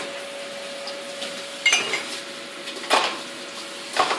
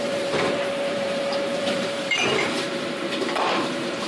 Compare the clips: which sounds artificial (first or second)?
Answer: second